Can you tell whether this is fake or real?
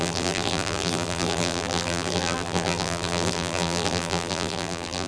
fake